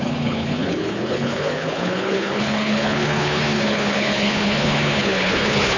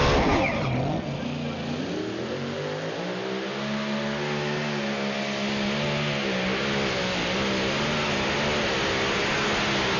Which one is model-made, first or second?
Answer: first